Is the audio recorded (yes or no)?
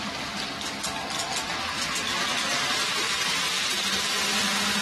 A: yes